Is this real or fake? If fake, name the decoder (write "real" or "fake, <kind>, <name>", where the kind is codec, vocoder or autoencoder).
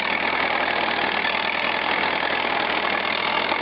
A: real